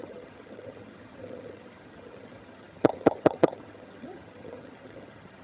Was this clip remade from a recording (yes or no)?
yes